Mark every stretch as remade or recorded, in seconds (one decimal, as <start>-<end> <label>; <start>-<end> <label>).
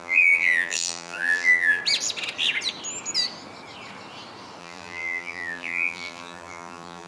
0.0-1.8 remade; 1.8-4.6 recorded; 4.6-7.1 remade